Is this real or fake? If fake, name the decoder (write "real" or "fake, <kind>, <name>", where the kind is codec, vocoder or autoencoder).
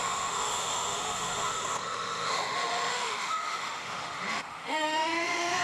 fake, autoencoder, DAC-VAE